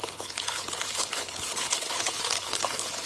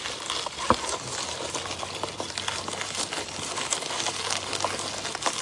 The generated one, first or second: first